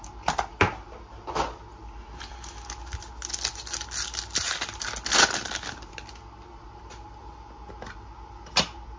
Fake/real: real